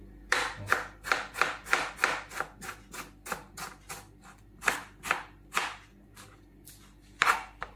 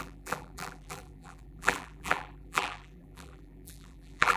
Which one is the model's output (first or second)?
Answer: second